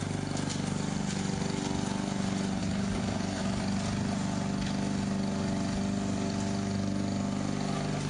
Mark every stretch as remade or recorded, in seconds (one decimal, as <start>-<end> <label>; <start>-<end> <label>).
0.0-2.6 recorded; 2.6-3.6 remade; 3.6-8.1 recorded